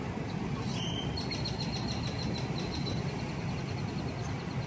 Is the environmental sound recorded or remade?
recorded